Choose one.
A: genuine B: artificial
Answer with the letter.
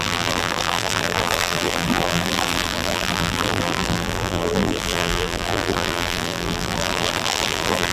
B